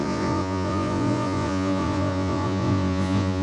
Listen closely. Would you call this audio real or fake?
fake